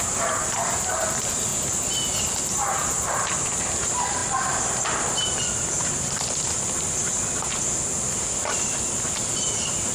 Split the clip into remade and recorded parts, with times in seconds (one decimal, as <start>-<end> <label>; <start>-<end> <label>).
0.0-1.5 remade; 1.5-2.3 recorded; 2.3-7.0 remade; 7.0-9.2 recorded; 9.2-9.9 remade